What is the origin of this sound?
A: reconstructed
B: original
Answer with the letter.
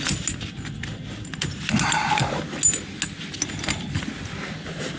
B